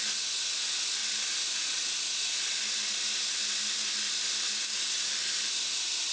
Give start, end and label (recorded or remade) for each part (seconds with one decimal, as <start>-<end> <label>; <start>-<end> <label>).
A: 0.0-4.5 recorded; 4.5-5.1 remade; 5.1-6.1 recorded